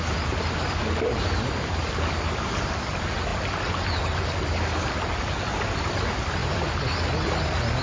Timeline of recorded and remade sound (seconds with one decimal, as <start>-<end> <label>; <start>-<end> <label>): 0.0-7.8 recorded